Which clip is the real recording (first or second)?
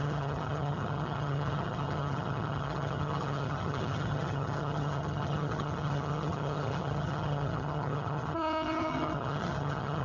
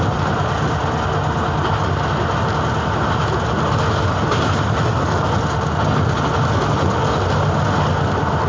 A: second